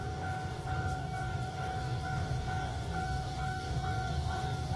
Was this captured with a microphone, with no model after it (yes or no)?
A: no